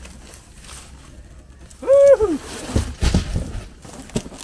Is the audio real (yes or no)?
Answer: yes